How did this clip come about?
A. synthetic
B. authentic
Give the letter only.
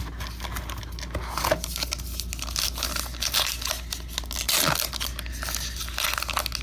B